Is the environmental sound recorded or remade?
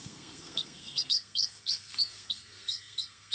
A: remade